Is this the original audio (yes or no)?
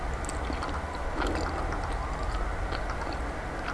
yes